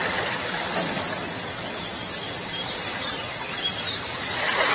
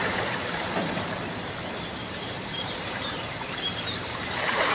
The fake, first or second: second